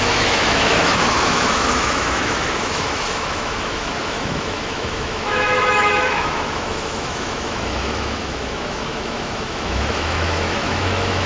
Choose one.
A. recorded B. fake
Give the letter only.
B